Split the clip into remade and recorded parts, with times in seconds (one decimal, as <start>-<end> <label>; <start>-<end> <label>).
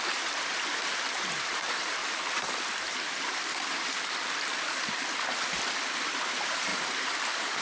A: 0.0-2.0 remade; 2.0-6.2 recorded; 6.2-7.6 remade